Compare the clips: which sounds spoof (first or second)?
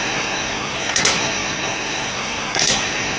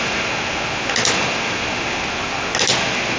first